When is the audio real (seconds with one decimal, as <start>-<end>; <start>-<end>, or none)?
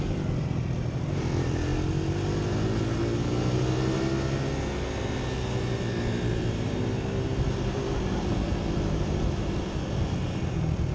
1.7-6.0